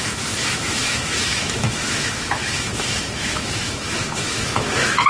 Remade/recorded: remade